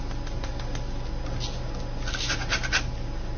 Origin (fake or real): real